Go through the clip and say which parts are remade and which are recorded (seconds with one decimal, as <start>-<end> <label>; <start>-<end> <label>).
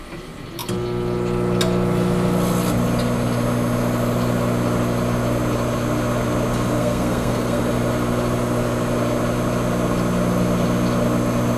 0.0-6.8 recorded; 6.8-7.6 remade; 7.6-11.6 recorded